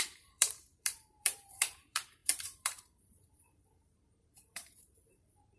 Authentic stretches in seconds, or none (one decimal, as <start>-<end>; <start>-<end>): none